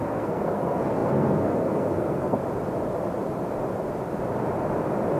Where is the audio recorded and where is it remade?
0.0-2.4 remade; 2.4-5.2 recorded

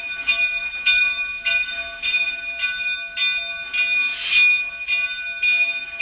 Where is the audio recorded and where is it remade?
0.0-6.0 recorded

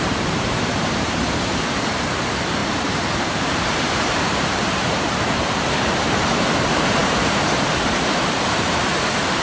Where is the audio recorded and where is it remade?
0.0-9.4 remade

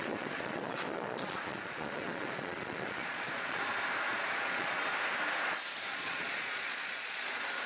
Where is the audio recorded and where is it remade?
0.0-3.6 remade; 3.6-4.1 recorded; 4.1-4.8 remade; 4.8-5.9 recorded; 5.9-7.3 remade; 7.3-7.7 recorded

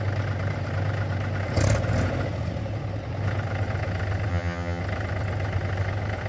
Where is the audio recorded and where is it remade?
0.0-4.3 recorded; 4.3-4.8 remade; 4.8-6.3 recorded

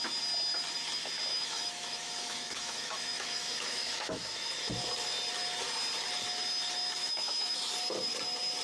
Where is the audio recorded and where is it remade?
0.0-1.3 recorded; 1.3-4.5 remade; 4.5-7.0 recorded; 7.0-7.7 remade; 7.7-8.6 recorded